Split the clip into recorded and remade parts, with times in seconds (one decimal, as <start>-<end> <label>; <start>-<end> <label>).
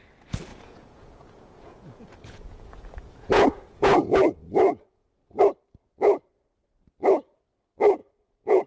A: 0.0-0.5 recorded; 0.5-5.4 remade; 5.4-8.0 recorded; 8.0-8.7 remade